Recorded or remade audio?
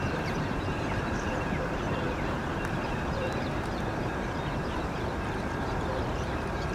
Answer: remade